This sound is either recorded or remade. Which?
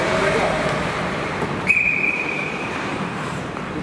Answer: remade